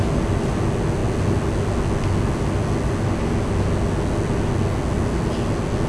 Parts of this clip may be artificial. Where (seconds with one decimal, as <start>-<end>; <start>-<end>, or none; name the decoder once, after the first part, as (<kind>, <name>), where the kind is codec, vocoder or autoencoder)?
none